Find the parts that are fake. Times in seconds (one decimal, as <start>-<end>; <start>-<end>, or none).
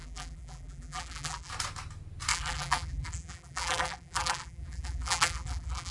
0.0-1.5; 2.3-5.9